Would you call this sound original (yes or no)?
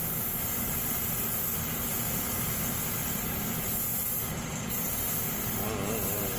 yes